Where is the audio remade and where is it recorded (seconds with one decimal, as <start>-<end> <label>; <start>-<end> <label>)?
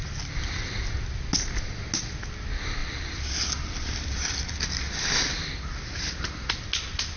0.0-0.6 remade; 0.6-2.8 recorded; 2.8-6.7 remade; 6.7-7.2 recorded